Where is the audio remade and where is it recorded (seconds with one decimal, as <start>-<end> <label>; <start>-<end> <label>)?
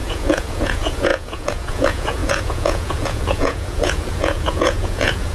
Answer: 0.0-5.3 remade